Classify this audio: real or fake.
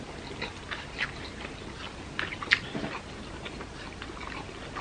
real